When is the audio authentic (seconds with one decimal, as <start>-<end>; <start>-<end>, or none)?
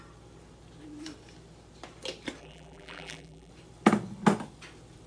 0.0-2.4; 3.5-5.1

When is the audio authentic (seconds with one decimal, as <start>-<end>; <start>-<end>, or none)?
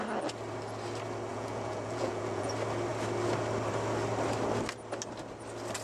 0.0-1.3; 2.5-5.8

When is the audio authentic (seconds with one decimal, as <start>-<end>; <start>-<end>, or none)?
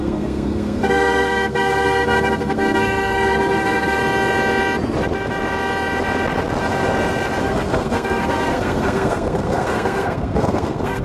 4.0-7.4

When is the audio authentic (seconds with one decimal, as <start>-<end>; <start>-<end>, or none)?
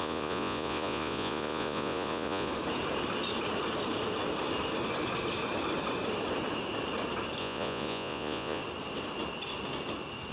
2.5-7.4; 8.6-10.3